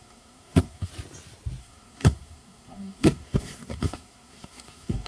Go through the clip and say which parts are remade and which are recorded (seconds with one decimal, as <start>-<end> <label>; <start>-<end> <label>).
0.0-0.9 remade; 0.9-1.6 recorded; 1.6-5.1 remade